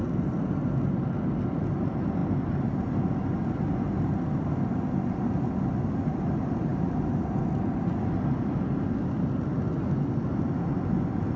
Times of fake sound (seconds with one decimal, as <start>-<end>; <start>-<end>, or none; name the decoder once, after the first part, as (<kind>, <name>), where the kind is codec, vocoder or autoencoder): none